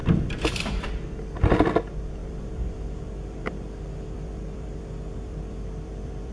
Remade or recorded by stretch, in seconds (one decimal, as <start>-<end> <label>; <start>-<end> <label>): 0.0-0.9 remade; 0.9-2.2 recorded; 2.2-6.3 remade